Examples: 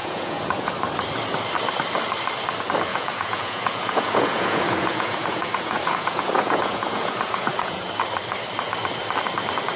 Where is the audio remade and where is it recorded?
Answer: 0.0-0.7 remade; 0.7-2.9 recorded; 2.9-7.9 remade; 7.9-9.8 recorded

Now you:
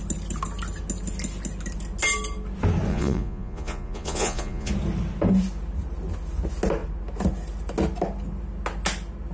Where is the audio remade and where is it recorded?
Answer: 0.0-2.9 recorded; 2.9-4.7 remade; 4.7-9.3 recorded

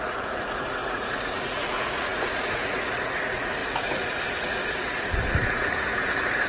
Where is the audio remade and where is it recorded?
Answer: 0.0-6.5 remade

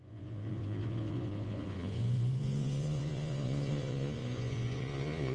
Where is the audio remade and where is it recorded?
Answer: 0.0-5.3 remade

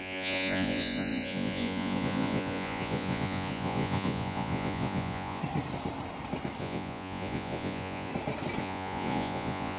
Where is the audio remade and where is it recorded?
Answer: 0.0-5.4 remade; 5.4-6.6 recorded; 6.6-8.1 remade; 8.1-8.6 recorded; 8.6-9.8 remade

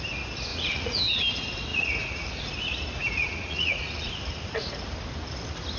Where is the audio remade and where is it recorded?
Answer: 0.0-0.5 recorded; 0.5-1.0 remade; 1.0-1.7 recorded; 1.7-2.5 remade; 2.5-3.0 recorded; 3.0-4.1 remade; 4.1-5.8 recorded